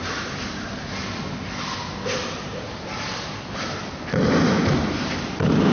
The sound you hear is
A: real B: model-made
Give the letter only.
A